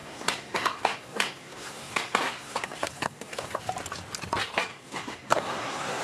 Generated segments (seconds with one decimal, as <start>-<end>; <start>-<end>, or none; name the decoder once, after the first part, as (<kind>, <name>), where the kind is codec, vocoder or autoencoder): 0.0-3.6 (codec, SNAC); 4.7-6.0